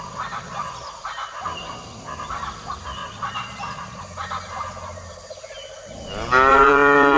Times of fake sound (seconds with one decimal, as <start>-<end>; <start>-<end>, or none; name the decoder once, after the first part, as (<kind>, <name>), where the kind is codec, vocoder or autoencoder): 3.0-4.0 (vocoder, Vocos); 6.5-7.2